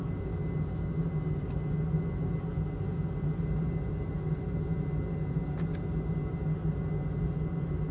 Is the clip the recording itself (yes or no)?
yes